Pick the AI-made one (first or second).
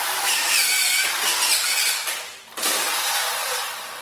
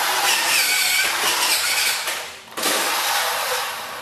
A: second